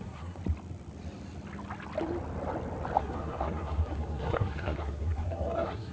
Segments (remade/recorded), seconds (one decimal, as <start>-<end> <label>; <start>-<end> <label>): 0.0-0.4 remade; 0.4-3.0 recorded; 3.0-5.9 remade